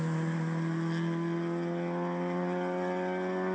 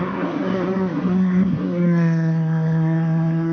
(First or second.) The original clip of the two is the first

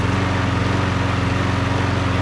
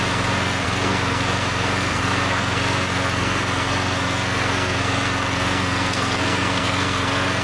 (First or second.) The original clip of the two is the first